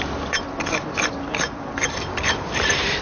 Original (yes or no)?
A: yes